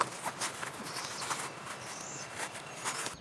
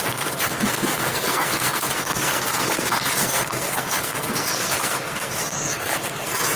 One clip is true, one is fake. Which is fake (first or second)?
second